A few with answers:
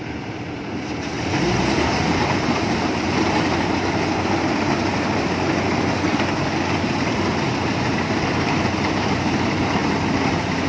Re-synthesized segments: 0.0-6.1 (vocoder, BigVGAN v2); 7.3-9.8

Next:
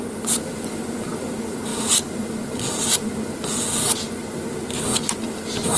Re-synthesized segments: none

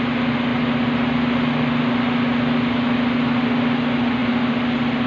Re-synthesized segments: 4.2-5.1 (vocoder, BigVGAN v2)

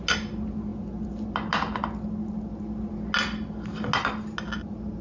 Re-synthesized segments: none

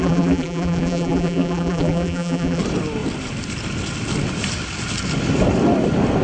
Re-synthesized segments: 0.0-2.6 (vocoder, BigVGAN v2)

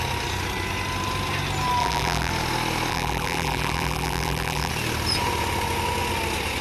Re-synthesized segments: 1.8-2.3 (vocoder, BigVGAN v2); 2.9-4.7

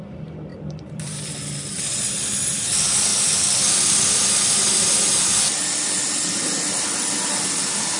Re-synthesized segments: 0.5-1.2 (vocoder, BigVGAN v2)